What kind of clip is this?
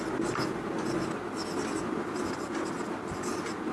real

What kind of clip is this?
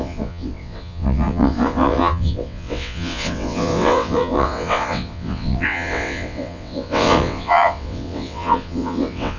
fake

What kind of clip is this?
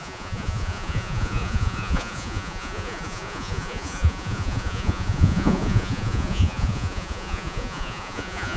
fake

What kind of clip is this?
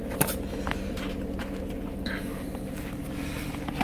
real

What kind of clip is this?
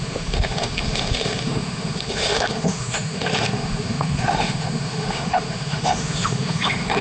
fake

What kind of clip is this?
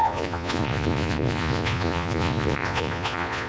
fake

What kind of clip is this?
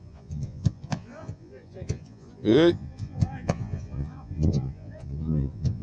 fake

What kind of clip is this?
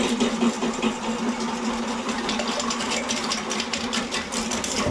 fake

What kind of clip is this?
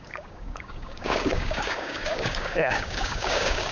fake